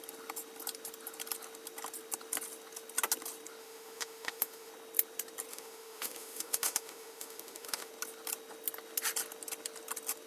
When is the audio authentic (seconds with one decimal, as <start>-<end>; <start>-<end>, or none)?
0.0-3.6; 4.7-5.5; 7.9-10.3